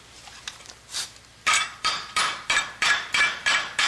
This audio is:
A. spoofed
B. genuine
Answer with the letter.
A